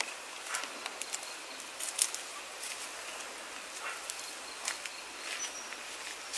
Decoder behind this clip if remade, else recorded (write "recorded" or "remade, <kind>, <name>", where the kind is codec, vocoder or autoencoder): recorded